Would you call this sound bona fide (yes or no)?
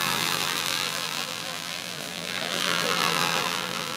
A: no